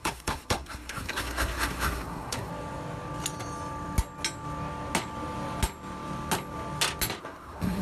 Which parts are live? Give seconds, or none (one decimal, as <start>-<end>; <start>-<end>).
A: 2.5-7.2